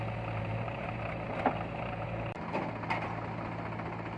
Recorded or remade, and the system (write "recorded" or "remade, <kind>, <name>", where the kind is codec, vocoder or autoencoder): recorded